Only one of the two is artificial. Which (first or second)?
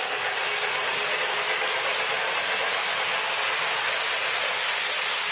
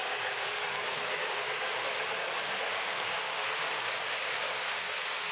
second